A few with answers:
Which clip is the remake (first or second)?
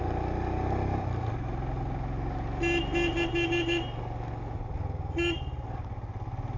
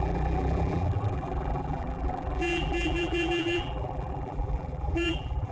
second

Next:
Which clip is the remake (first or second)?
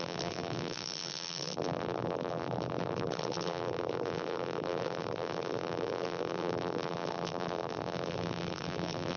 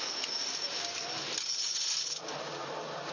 first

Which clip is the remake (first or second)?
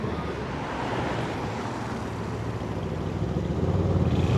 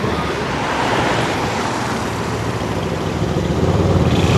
second